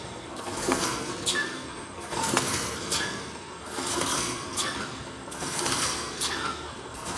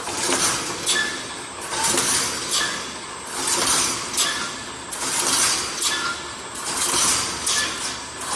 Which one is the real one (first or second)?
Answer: second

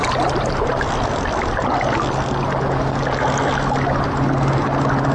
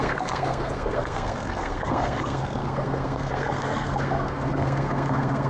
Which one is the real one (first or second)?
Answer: first